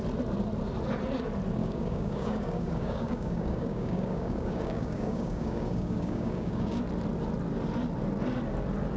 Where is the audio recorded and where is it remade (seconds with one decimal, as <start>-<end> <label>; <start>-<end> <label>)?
0.0-1.6 recorded; 1.6-6.8 remade; 6.8-9.0 recorded